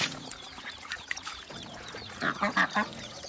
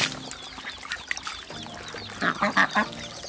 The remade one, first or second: first